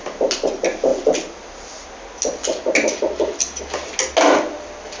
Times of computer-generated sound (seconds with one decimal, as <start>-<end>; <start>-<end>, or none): none